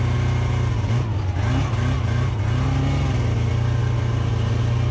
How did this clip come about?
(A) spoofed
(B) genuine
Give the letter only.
B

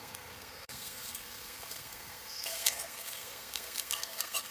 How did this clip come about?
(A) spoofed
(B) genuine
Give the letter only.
A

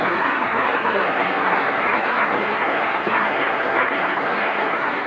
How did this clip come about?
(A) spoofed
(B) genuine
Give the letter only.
A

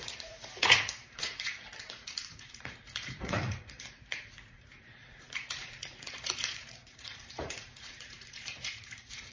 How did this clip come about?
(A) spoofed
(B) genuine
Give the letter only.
A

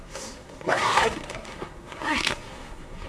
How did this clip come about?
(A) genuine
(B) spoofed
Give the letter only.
B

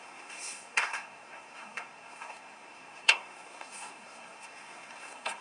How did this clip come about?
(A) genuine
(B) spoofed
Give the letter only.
B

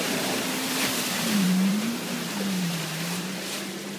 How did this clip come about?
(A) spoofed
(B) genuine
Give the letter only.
A